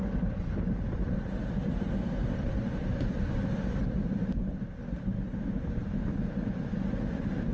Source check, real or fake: real